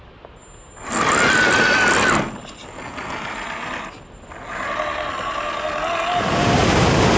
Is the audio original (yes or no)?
yes